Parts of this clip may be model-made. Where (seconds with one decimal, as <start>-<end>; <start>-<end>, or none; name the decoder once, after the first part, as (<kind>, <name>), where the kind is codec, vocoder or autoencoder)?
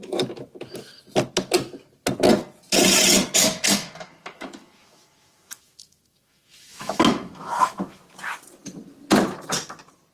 3.4-8.0 (autoencoder, DAC-VAE)